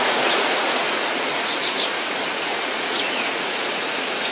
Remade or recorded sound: remade